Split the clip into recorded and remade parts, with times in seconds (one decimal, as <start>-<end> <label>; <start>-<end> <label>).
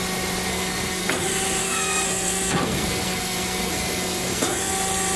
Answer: 0.0-0.5 recorded; 0.5-1.1 remade; 1.1-1.6 recorded; 1.6-4.7 remade; 4.7-5.2 recorded